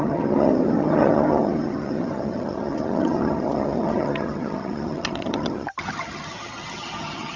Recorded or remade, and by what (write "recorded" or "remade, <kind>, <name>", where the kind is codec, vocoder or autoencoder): remade, vocoder, HiFi-GAN